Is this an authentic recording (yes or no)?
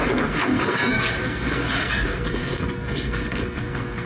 no